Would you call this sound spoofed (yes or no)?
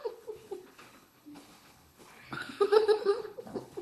yes